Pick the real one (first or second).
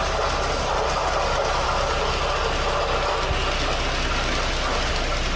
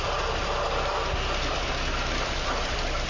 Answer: first